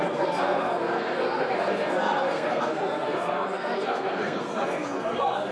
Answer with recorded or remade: remade